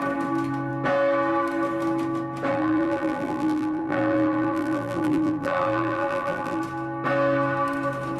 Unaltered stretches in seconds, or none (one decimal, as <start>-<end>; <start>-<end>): 0.0-2.5; 6.6-8.2